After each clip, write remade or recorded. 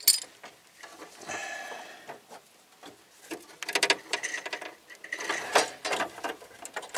recorded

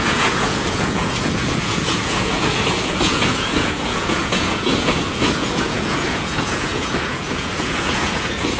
remade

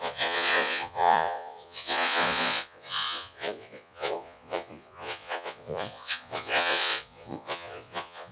remade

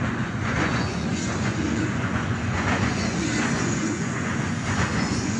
remade